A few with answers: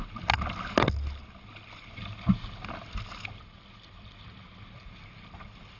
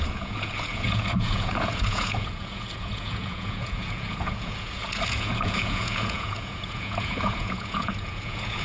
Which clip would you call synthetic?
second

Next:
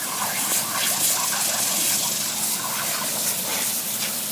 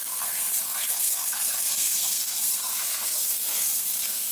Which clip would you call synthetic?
second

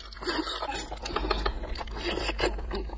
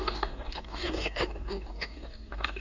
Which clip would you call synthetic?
second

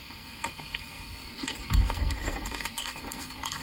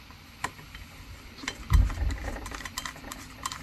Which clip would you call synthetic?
first